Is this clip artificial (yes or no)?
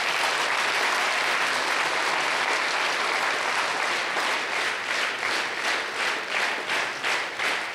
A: no